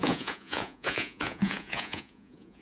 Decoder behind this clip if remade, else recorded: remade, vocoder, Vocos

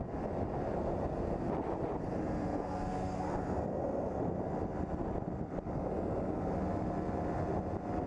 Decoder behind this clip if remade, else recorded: recorded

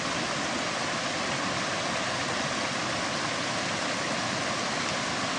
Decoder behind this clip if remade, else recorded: recorded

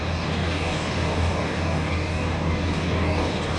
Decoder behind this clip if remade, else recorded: remade, codec, DAC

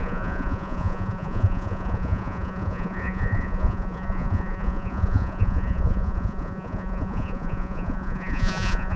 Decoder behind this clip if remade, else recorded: remade, vocoder, Vocos